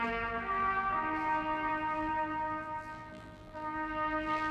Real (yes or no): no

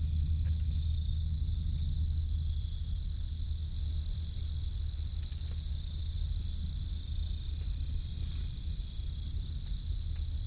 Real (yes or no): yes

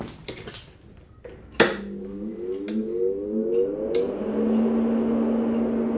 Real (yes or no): yes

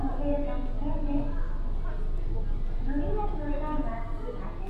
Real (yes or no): yes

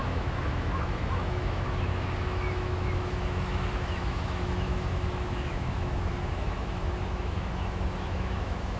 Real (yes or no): no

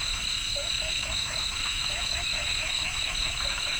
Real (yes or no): no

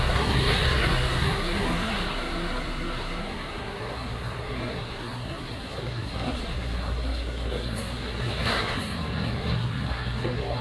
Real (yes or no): no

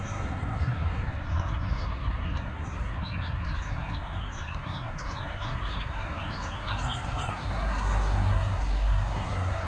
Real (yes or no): no